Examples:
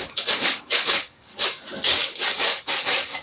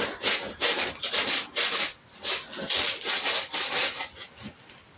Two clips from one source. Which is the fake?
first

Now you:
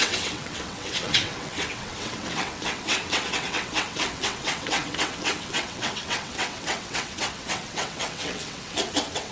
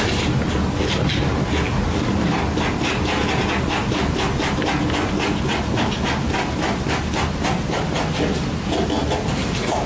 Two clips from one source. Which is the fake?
first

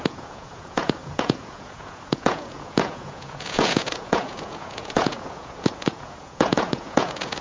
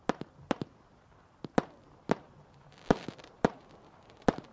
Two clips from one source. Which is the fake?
first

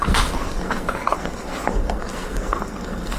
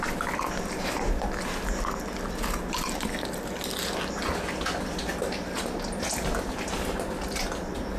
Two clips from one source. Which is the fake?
first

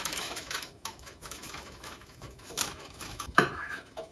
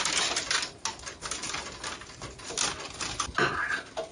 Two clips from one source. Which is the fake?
first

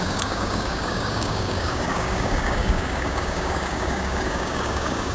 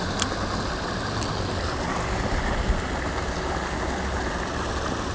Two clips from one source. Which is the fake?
first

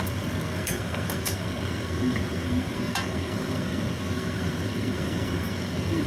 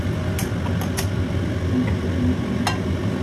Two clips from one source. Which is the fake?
first